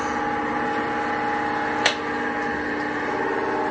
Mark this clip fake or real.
real